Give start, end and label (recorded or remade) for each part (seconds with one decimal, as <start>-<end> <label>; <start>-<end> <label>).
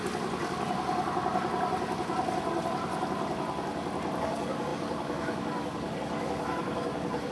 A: 0.0-4.2 recorded; 4.2-7.3 remade